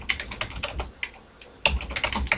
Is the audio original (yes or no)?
yes